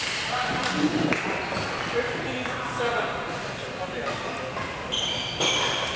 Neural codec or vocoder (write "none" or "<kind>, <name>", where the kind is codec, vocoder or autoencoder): none